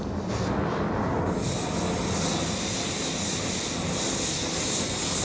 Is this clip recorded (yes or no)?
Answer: yes